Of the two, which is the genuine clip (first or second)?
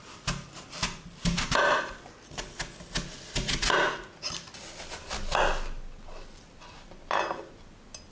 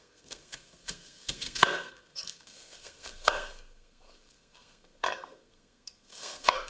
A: first